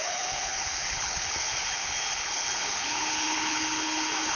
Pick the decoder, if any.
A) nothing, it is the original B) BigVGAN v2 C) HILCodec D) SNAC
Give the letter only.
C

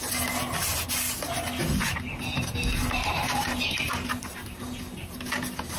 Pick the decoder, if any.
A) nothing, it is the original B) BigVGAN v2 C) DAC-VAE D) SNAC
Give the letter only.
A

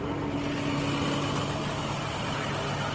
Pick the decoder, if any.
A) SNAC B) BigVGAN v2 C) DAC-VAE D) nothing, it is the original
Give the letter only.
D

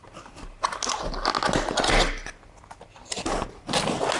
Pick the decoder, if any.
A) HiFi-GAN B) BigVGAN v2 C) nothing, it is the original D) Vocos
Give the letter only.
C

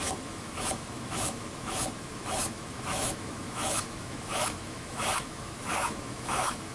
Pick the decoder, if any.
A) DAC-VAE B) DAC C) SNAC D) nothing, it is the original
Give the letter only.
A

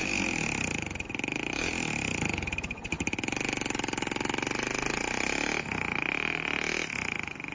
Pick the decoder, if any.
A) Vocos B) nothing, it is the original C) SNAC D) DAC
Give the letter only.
B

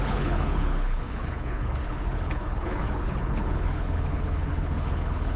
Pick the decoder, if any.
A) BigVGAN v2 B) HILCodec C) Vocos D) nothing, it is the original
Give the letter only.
B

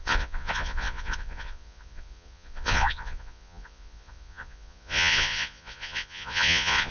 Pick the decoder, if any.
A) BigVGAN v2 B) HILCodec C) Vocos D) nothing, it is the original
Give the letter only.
C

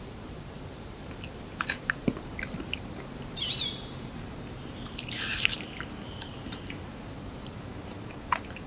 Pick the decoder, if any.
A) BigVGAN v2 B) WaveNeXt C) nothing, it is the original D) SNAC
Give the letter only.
A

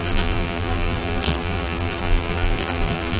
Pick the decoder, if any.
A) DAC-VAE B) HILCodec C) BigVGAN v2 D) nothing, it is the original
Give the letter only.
C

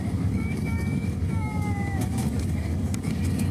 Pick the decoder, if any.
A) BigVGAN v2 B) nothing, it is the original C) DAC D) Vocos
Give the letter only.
C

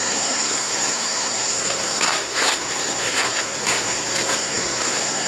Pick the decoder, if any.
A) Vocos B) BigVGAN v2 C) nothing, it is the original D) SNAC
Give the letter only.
D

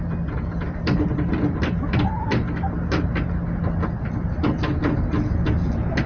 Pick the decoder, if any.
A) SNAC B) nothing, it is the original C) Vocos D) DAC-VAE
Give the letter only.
B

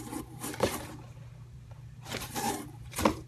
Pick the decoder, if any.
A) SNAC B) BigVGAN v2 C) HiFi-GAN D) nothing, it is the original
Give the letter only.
B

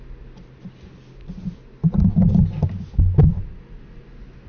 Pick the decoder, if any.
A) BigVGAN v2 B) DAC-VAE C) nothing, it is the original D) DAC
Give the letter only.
C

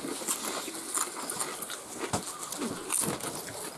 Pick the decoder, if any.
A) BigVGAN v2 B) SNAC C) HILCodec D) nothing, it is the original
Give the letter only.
D